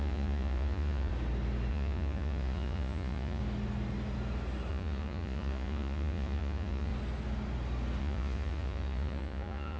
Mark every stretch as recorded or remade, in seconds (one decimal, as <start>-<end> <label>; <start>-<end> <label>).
0.0-1.1 remade; 1.1-1.7 recorded; 1.7-3.4 remade; 3.4-4.7 recorded; 4.7-6.9 remade; 6.9-8.0 recorded; 8.0-9.8 remade